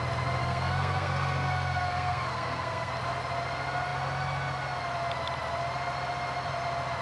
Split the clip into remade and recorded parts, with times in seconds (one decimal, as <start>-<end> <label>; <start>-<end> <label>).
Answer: 0.0-0.4 recorded; 0.4-2.9 remade; 2.9-7.0 recorded